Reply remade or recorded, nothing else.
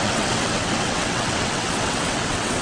remade